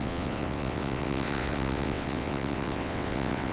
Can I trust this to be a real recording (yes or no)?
no